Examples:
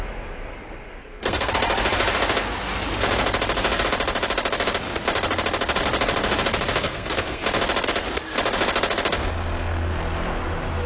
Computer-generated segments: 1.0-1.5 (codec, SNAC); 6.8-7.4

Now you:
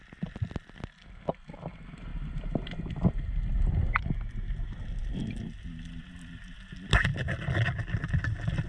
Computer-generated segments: none

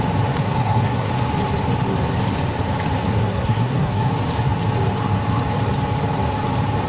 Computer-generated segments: 0.4-1.1 (codec, SNAC); 3.1-4.1

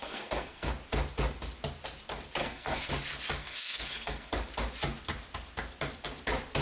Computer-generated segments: 0.0-0.7 (codec, SNAC); 2.4-2.9; 3.4-4.3